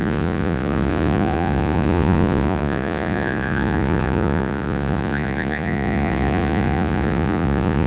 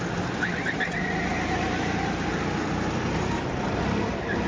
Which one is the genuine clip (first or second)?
second